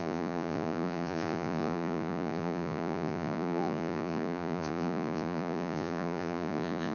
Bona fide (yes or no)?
no